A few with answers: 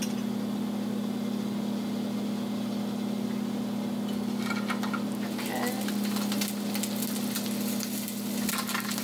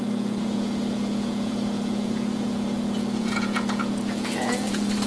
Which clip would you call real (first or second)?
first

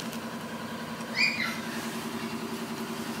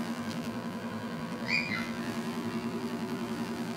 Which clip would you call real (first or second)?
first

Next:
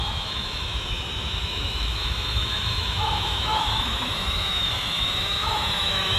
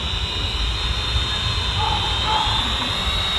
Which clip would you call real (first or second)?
second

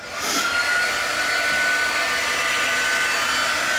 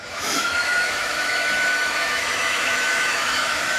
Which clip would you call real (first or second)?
first